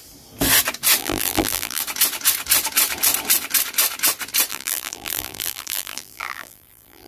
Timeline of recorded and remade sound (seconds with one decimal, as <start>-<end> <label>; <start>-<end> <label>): 0.0-1.0 recorded; 1.0-1.8 remade; 1.8-4.5 recorded; 4.5-7.1 remade